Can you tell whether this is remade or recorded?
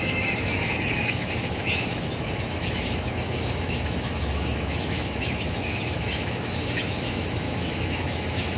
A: remade